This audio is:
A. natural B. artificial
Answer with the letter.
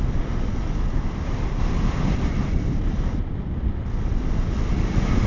A